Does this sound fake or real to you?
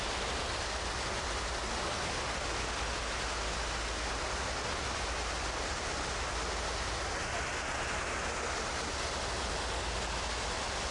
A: real